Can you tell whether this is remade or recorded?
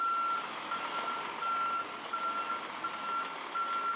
recorded